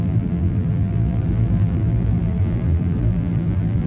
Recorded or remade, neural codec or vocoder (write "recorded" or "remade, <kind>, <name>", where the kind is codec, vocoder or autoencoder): remade, vocoder, BigVGAN v2